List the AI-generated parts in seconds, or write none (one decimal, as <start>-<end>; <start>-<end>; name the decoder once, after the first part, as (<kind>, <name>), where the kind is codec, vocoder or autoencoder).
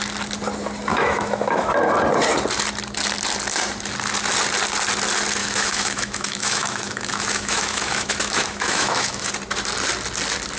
0.9-1.7 (autoencoder, DAC-VAE); 5.4-9.3